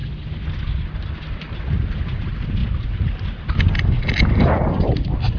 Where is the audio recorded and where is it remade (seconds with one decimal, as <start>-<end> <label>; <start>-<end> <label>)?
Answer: 0.0-5.4 recorded